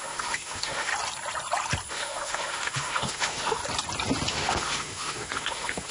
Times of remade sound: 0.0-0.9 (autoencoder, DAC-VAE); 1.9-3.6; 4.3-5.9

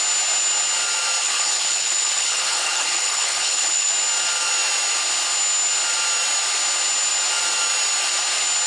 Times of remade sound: 1.2-3.9 (codec, HILCodec)

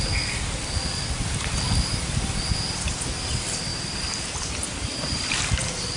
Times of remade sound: none

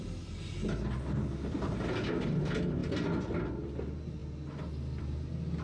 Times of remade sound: none